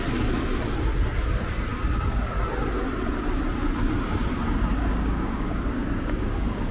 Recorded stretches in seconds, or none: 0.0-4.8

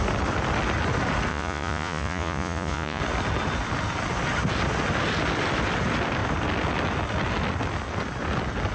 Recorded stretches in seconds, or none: 0.0-1.3; 3.0-8.7

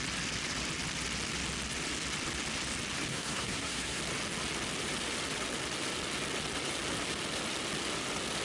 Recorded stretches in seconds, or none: 0.0-3.1; 4.0-8.4

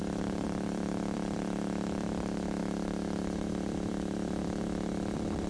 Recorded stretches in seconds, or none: 2.6-3.5